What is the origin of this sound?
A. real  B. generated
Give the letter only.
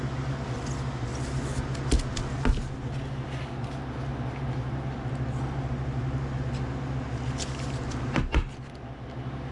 A